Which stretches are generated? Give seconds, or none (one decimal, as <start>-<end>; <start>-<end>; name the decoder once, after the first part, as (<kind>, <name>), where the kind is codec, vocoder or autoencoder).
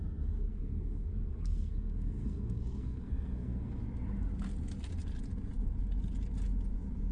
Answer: 0.0-3.8 (codec, SNAC)